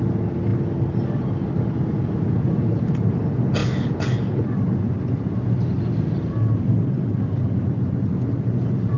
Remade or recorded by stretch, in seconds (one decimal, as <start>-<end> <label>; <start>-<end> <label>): 0.0-9.0 recorded